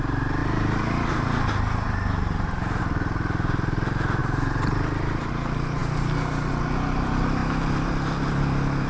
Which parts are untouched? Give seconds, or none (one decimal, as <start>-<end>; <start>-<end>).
0.0-0.4; 2.8-4.2; 5.3-8.9